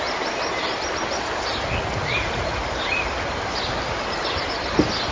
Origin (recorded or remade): recorded